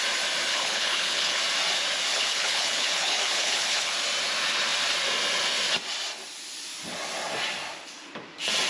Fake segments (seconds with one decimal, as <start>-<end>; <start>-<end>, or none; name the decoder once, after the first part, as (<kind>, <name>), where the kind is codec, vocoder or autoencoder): 0.5-1.4 (codec, HILCodec); 2.1-3.9